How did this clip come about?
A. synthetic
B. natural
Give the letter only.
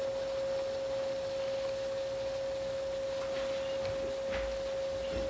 B